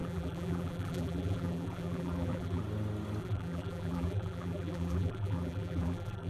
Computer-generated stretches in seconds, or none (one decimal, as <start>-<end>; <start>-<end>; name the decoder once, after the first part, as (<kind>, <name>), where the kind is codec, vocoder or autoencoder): 0.0-2.6 (vocoder, BigVGAN v2); 3.2-6.3